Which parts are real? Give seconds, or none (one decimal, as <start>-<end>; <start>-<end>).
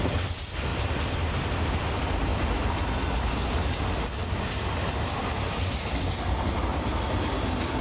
0.0-7.8